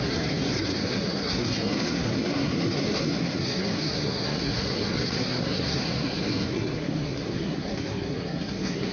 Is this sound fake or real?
fake